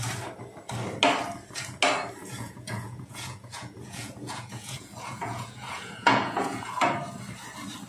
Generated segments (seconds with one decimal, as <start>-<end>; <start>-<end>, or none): 2.2-6.9

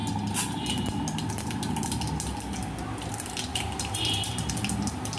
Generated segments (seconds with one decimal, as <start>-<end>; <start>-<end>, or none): 3.5-4.5

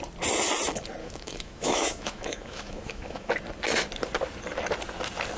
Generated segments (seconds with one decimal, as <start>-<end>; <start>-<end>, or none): 1.0-3.3

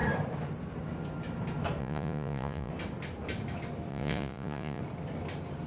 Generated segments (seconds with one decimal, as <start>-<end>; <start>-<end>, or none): 1.8-2.7; 3.9-4.8

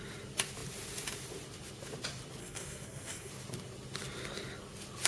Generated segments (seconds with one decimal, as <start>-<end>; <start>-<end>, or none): 2.4-3.3